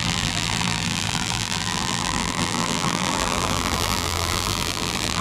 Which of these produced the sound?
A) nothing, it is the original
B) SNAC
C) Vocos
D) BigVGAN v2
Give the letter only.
D